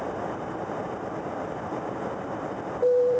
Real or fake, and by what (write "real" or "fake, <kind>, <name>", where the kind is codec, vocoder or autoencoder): fake, vocoder, BigVGAN v2